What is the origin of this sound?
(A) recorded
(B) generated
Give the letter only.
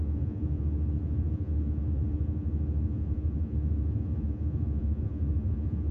B